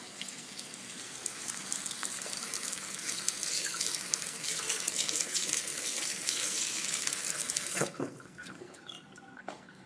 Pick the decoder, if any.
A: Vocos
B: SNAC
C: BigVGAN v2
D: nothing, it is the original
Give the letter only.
B